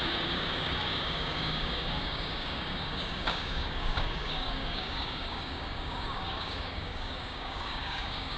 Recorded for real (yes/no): no